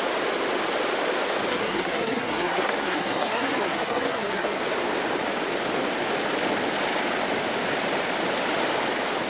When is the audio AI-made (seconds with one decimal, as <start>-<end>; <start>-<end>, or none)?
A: 1.5-4.6